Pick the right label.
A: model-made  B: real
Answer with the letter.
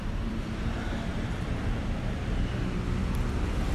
A